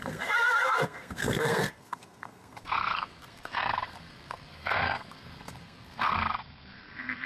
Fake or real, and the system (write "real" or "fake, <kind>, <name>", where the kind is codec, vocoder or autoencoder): fake, codec, SNAC